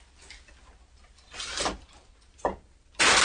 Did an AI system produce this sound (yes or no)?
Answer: no